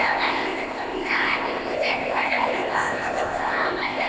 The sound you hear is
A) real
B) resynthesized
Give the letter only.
B